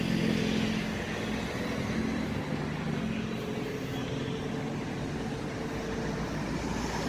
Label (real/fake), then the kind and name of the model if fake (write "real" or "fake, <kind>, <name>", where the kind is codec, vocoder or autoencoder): real